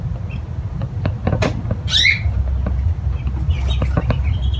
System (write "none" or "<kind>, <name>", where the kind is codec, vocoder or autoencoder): none